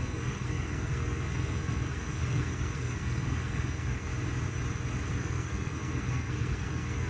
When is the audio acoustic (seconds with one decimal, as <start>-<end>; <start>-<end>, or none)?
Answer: 4.1-5.1